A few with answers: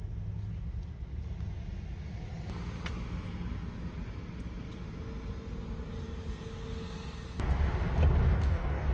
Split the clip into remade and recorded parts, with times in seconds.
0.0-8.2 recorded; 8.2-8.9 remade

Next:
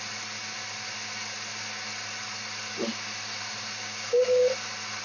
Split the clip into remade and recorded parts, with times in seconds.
0.0-3.8 recorded; 3.8-4.4 remade; 4.4-5.0 recorded

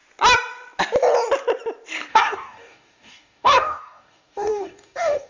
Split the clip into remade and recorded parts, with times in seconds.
0.0-2.1 recorded; 2.1-5.3 remade

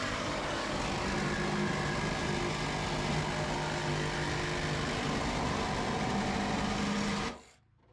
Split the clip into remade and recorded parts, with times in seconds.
0.0-0.7 remade; 0.7-7.9 recorded

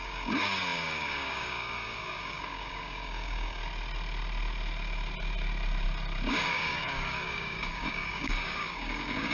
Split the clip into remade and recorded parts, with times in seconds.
0.0-3.6 remade; 3.6-6.3 recorded; 6.3-9.3 remade

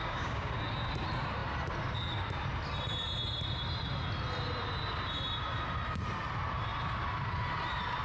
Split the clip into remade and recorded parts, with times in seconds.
0.0-0.5 remade; 0.5-8.0 recorded